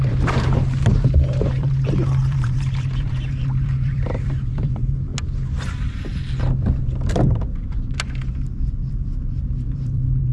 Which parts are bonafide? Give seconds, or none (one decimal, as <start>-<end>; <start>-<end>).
5.1-8.9